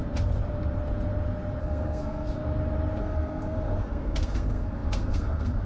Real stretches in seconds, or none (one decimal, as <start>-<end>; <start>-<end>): 0.0-1.6; 2.4-3.0